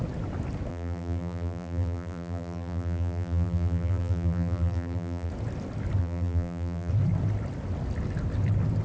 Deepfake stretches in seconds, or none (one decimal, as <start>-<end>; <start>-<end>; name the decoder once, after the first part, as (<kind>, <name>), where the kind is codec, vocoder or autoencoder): 0.7-5.3 (vocoder, BigVGAN v2); 6.0-6.9